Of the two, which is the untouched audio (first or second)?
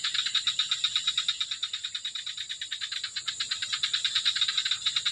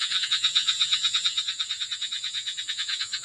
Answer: first